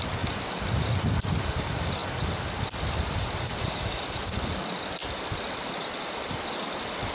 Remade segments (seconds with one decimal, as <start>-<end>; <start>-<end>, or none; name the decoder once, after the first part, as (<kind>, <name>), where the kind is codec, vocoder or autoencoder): none